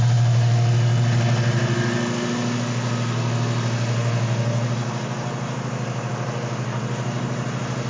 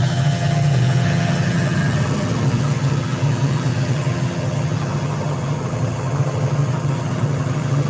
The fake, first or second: second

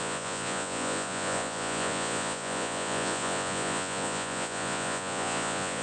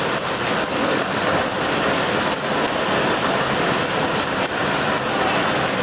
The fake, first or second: first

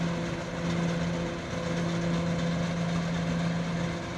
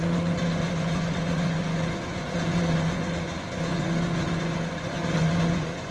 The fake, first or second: second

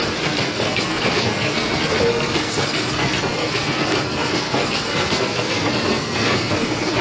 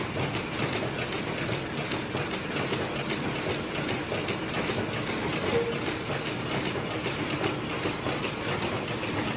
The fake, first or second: first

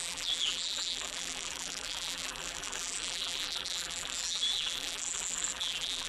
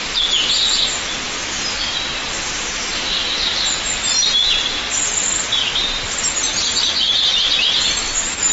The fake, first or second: first